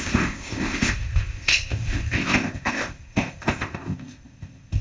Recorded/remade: remade